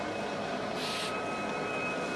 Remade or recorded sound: recorded